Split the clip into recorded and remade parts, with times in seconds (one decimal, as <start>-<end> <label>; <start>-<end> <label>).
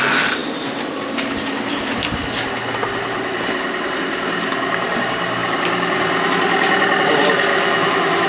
0.0-7.5 recorded; 7.5-8.3 remade